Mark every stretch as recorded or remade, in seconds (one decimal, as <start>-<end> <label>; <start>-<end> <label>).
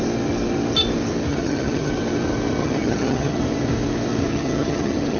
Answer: 0.0-1.3 recorded; 1.3-1.9 remade; 1.9-2.6 recorded; 2.6-3.4 remade; 3.4-4.3 recorded; 4.3-5.2 remade